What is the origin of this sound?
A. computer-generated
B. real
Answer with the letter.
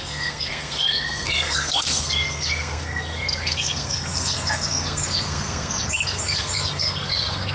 A